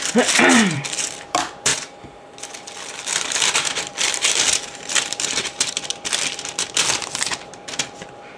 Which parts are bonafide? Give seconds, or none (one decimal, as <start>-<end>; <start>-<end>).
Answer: 1.7-3.1